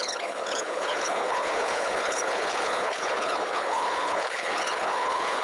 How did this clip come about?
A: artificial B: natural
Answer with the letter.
A